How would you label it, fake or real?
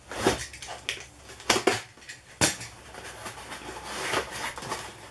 real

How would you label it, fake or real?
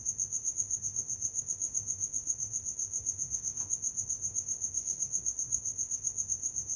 fake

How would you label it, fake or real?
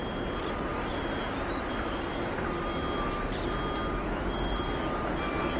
real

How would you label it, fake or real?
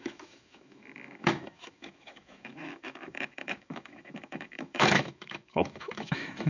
fake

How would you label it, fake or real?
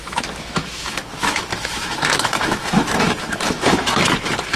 fake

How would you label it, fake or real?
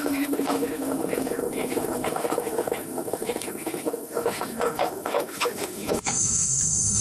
fake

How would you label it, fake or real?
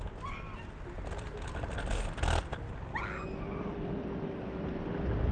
real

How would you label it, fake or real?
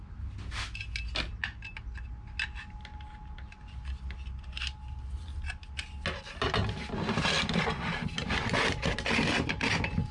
real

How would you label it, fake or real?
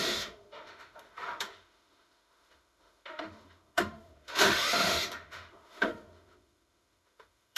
fake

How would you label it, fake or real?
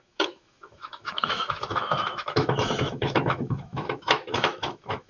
fake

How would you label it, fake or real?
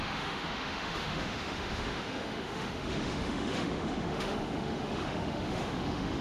fake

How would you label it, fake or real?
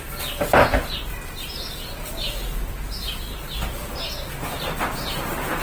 real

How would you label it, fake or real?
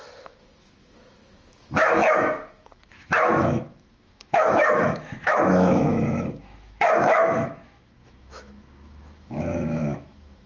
fake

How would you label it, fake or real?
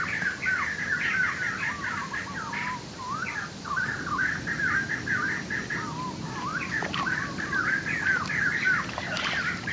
real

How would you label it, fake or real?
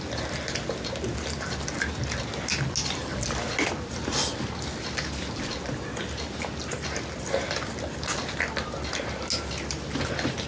real